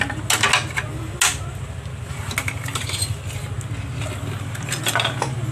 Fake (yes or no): no